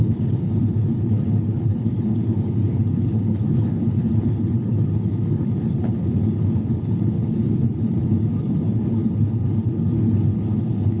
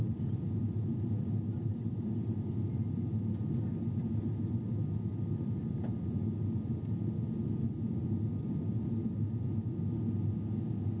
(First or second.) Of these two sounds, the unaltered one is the second